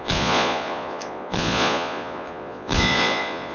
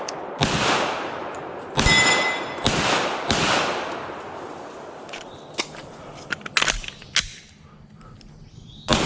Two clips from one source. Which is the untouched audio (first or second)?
second